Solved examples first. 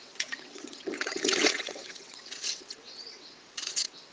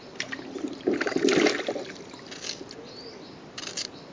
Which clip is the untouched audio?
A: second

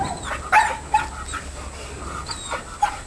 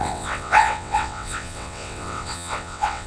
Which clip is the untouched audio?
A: first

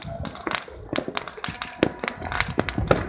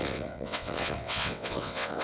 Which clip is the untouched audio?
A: first